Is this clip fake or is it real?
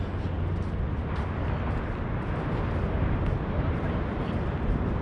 real